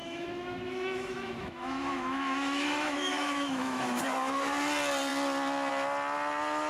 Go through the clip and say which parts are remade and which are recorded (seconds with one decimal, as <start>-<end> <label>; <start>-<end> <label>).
0.0-4.0 remade; 4.0-6.7 recorded